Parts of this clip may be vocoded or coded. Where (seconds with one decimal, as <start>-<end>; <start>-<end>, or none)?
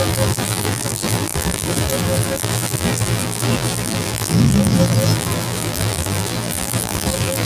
0.0-7.5